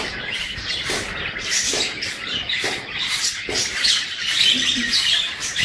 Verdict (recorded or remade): remade